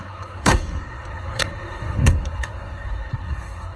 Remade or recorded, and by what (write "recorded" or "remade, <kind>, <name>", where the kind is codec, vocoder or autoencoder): remade, codec, SNAC